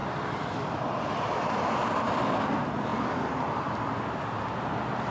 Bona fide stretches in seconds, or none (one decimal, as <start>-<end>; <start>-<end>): 2.2-5.1